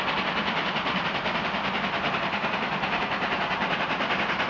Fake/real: real